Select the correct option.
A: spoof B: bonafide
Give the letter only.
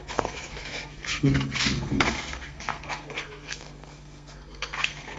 A